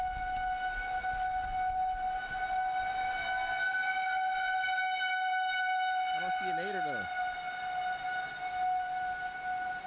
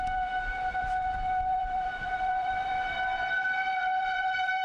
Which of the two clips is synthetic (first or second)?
second